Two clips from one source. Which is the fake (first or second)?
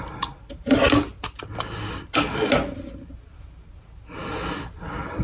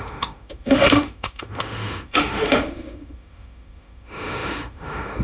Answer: second